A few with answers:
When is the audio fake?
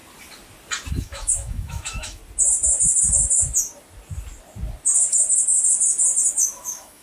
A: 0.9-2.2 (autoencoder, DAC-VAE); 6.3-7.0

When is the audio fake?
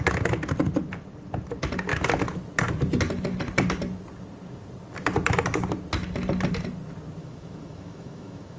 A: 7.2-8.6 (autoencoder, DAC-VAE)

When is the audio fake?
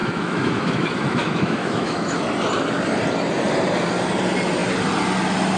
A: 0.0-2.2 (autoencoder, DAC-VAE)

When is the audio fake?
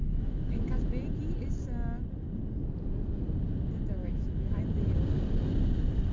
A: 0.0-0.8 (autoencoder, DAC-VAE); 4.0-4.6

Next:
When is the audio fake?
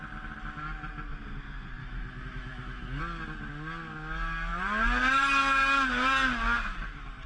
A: 1.8-3.0 (autoencoder, DAC-VAE)